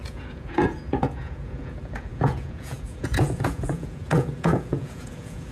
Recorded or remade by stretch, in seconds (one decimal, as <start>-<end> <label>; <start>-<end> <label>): 0.0-5.5 remade